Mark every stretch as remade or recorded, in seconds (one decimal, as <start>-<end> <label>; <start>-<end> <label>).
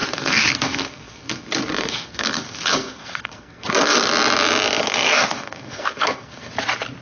0.0-4.1 remade; 4.1-4.8 recorded; 4.8-6.5 remade; 6.5-7.0 recorded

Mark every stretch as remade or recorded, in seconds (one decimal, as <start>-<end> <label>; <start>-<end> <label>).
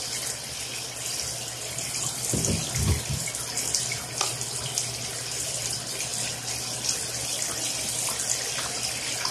0.0-9.3 recorded